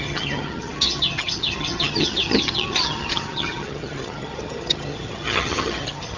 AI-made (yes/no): yes